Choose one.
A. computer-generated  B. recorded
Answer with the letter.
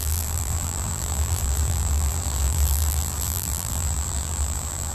A